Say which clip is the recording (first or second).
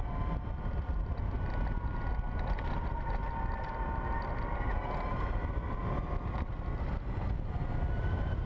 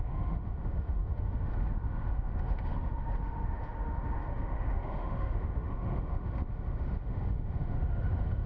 first